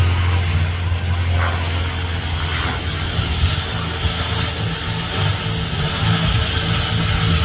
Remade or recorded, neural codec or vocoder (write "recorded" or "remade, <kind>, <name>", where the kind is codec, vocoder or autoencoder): recorded